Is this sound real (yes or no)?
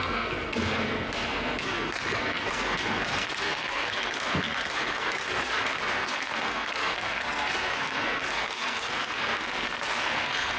no